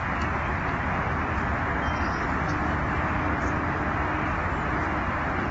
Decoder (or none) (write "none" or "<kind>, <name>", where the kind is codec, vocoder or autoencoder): none